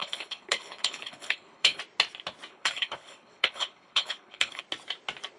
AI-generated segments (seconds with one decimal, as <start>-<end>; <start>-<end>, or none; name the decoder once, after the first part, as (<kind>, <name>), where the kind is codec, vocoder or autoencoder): 0.0-1.8 (codec, HILCodec); 2.5-4.6